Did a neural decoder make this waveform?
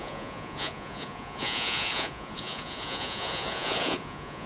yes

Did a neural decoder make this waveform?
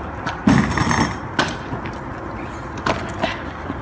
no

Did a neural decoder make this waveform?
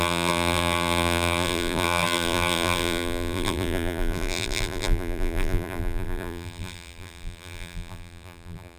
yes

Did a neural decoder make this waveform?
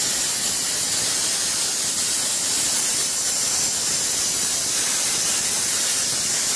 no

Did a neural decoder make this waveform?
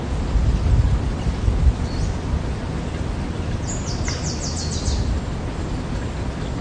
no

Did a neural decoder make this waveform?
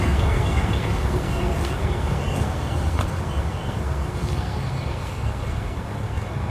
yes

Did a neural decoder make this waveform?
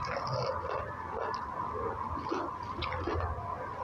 no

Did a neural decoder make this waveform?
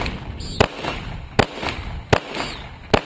no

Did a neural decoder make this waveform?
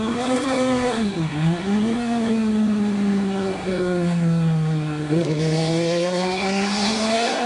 yes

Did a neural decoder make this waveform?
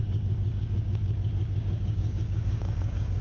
yes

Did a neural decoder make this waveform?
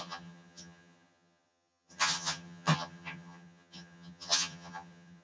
yes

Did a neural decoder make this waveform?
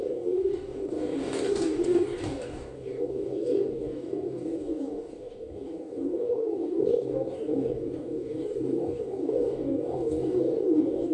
yes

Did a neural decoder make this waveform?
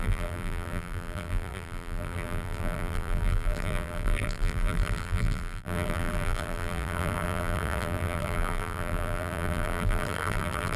yes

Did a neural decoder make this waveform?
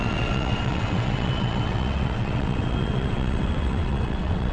yes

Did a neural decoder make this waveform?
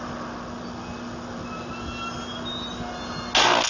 no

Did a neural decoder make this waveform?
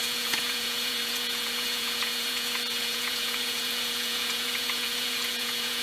yes